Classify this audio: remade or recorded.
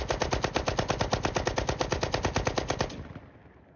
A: recorded